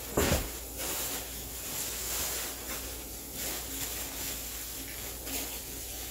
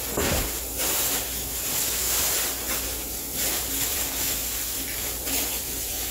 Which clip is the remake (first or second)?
second